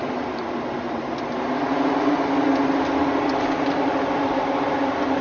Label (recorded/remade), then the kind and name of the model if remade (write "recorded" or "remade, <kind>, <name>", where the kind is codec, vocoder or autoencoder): recorded